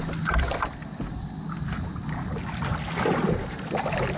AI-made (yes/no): no